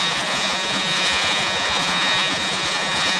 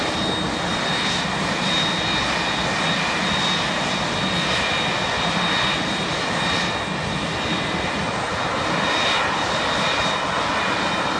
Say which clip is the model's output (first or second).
first